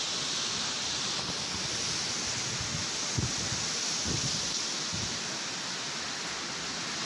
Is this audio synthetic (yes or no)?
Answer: no